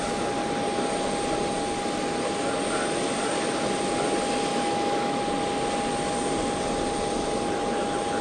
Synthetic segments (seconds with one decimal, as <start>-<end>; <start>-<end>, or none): 4.5-5.2